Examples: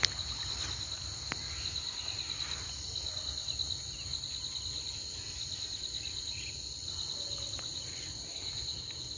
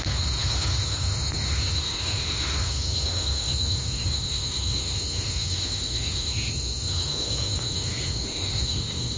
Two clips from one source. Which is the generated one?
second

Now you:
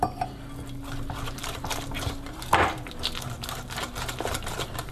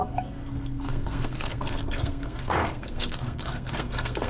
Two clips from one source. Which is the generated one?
second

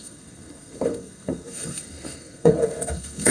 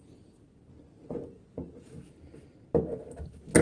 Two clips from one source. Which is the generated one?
first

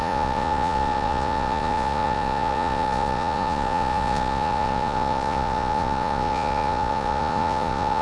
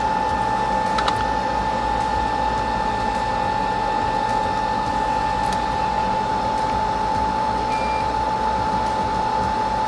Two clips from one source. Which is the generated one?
first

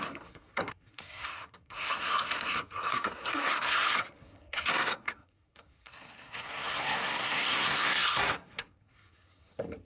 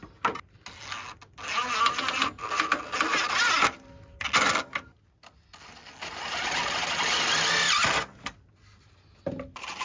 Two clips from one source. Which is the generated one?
first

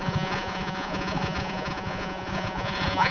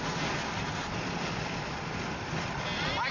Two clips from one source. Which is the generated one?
first